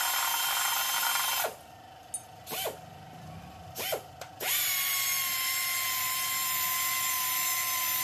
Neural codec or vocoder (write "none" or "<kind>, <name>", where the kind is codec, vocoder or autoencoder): none